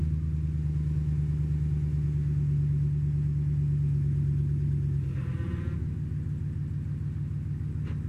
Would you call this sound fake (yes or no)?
no